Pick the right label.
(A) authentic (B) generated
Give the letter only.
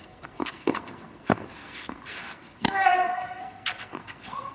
B